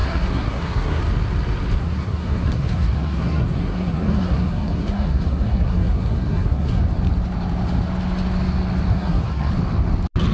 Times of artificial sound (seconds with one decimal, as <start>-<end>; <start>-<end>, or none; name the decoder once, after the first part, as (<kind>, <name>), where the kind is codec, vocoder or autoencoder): 0.0-1.0 (codec, SNAC); 1.8-6.8; 8.9-9.5

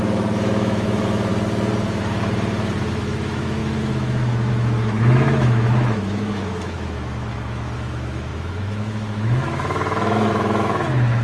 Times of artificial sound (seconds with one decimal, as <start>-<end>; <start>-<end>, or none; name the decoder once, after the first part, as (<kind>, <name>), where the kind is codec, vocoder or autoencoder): 0.0-1.3 (autoencoder, DAC-VAE); 3.0-11.2